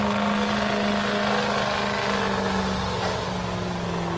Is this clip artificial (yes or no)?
no